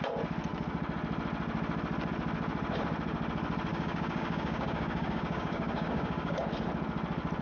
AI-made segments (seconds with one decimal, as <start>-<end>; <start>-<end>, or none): 3.7-6.5